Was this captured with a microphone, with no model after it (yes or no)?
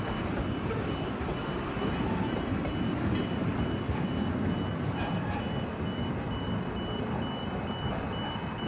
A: yes